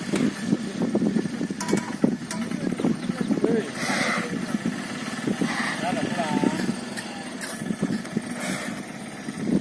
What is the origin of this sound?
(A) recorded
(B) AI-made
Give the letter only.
A